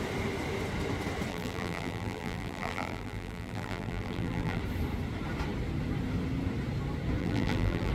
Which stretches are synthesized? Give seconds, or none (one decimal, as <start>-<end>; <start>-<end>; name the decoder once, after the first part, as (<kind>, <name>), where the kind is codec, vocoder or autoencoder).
1.3-4.6 (vocoder, BigVGAN v2); 7.2-7.9